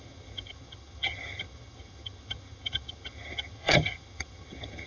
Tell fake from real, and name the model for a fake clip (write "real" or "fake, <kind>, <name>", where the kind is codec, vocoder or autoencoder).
fake, vocoder, HiFi-GAN